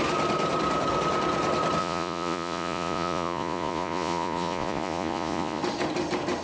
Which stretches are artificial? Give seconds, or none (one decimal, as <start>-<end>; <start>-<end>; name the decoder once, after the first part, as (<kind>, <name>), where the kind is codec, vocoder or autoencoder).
1.8-5.6 (vocoder, Vocos)